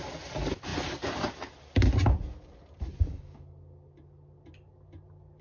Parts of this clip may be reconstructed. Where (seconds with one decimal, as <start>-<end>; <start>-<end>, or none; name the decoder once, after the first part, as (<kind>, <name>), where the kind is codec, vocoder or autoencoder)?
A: none

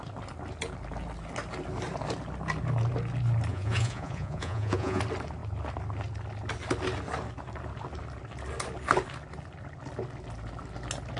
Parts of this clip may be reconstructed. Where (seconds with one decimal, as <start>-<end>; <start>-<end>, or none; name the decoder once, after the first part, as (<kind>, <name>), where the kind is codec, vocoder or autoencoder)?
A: 3.5-5.0 (vocoder, Vocos)

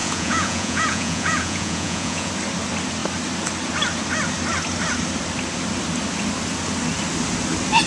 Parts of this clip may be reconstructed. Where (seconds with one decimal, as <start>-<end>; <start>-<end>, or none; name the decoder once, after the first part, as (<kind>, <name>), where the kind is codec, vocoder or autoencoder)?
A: 0.0-2.3 (vocoder, Vocos)